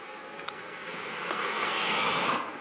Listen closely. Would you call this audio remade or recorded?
remade